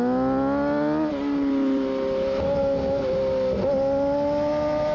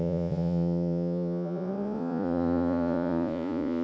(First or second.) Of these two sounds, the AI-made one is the second